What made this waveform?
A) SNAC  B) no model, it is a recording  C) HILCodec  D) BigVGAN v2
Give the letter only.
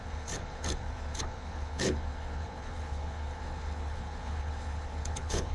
C